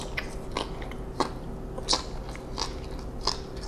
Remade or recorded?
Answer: recorded